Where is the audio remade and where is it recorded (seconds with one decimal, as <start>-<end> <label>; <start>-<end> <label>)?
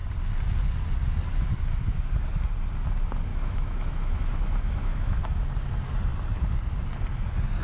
0.0-3.3 recorded; 3.3-5.4 remade; 5.4-7.6 recorded